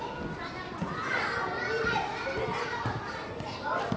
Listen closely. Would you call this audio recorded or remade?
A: recorded